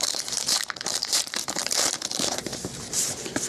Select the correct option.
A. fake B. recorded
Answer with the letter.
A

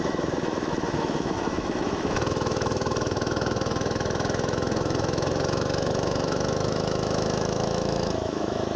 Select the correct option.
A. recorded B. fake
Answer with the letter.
B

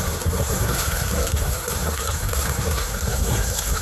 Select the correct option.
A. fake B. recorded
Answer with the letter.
A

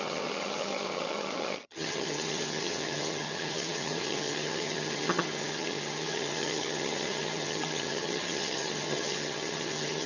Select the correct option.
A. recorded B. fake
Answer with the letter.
B